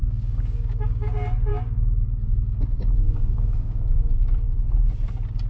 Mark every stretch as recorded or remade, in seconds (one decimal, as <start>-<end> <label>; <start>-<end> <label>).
0.0-1.1 remade; 1.1-1.5 recorded; 1.5-4.2 remade; 4.2-5.5 recorded